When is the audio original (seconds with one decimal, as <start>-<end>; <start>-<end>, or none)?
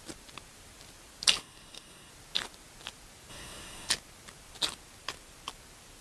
0.0-1.4; 2.1-3.3; 3.9-6.0